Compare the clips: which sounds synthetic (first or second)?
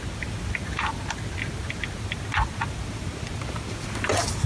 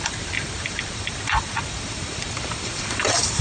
second